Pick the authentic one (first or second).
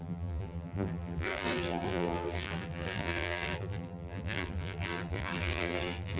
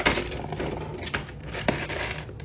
second